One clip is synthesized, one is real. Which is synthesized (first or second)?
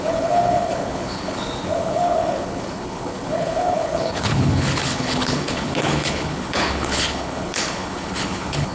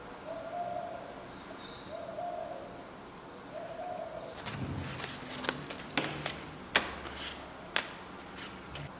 first